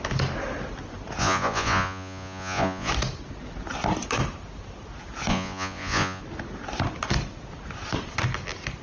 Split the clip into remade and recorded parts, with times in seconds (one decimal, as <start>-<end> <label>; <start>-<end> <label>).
0.0-1.2 recorded; 1.2-2.9 remade; 2.9-5.3 recorded; 5.3-6.2 remade; 6.2-8.8 recorded